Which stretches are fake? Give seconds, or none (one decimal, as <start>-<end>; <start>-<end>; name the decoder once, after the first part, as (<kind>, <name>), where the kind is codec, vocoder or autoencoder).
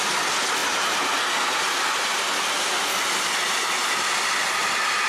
none